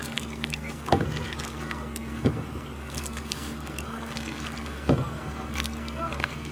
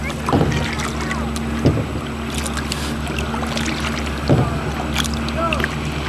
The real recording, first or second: second